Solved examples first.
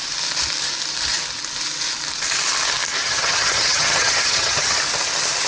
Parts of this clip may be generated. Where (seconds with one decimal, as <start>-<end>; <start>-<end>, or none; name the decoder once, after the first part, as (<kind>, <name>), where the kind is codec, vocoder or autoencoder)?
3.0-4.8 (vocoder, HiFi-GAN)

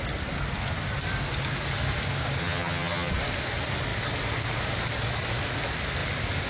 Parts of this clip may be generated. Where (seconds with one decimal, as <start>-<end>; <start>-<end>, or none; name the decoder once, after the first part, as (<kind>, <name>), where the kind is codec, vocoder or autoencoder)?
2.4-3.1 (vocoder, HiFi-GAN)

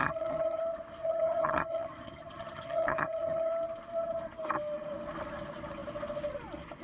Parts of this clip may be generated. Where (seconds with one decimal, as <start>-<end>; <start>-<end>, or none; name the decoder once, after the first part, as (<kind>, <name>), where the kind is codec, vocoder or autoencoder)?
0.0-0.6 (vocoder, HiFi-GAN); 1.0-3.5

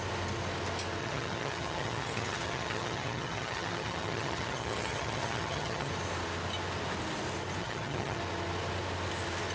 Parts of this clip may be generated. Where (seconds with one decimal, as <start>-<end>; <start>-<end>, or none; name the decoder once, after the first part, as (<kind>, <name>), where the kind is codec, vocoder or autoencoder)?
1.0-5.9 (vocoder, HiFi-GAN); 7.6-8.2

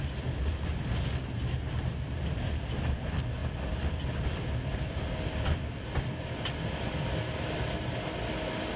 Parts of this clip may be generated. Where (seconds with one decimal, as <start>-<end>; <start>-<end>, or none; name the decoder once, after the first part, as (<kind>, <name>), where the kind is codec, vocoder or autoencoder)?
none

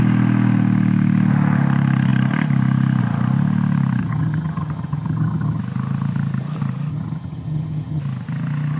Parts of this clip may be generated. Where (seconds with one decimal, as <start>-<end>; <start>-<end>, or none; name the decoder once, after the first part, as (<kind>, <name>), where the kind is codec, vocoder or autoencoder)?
4.0-5.6 (vocoder, HiFi-GAN); 6.9-8.0